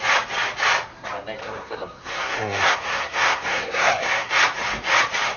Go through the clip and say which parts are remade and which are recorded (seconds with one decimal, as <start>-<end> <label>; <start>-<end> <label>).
0.0-1.4 recorded; 1.4-4.3 remade; 4.3-5.4 recorded